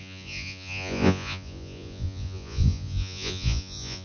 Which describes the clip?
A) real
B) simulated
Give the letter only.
B